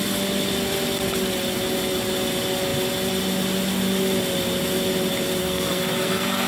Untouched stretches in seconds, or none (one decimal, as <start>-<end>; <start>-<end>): 0.0-5.4

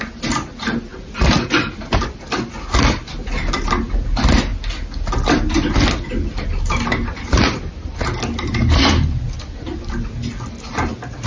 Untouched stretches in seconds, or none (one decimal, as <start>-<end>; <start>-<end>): 0.0-11.3

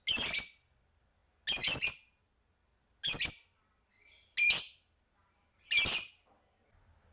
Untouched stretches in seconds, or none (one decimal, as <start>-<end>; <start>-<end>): 0.0-7.1

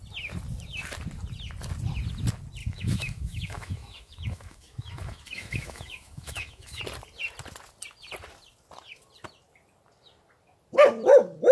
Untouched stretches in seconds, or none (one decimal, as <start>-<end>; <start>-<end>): 0.0-2.6; 6.8-11.5

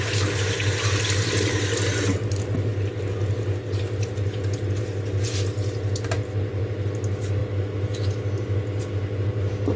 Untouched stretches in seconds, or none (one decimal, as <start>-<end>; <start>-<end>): 0.0-9.8

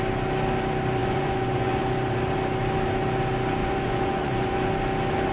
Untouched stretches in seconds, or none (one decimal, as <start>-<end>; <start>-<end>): 0.0-1.0; 1.8-3.6; 4.7-5.3

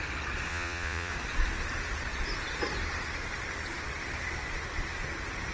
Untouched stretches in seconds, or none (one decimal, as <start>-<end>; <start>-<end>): 0.0-0.5; 1.1-5.5

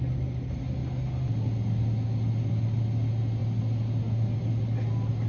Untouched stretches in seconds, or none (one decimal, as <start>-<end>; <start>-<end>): 0.0-5.3